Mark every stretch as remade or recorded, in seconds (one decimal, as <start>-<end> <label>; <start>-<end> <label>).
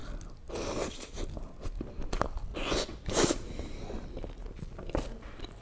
0.0-2.5 recorded; 2.5-3.3 remade; 3.3-5.6 recorded